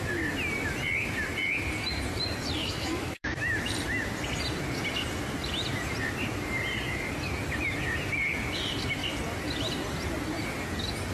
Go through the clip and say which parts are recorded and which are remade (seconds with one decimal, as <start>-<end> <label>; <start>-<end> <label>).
0.0-2.6 recorded; 2.6-3.7 remade; 3.7-11.1 recorded

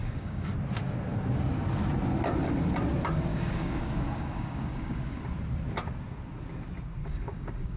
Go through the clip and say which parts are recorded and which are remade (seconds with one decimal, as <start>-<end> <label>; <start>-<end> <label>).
0.0-0.5 remade; 0.5-3.3 recorded; 3.3-5.2 remade; 5.2-7.0 recorded; 7.0-7.8 remade

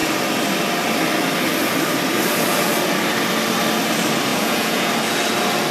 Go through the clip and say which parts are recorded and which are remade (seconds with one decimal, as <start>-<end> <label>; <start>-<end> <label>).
0.0-4.3 recorded; 4.3-4.9 remade; 4.9-5.7 recorded

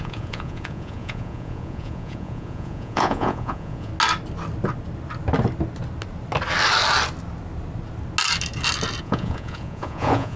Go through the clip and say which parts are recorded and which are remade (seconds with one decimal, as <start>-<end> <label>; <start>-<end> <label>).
0.0-3.9 remade; 3.9-9.0 recorded; 9.0-10.4 remade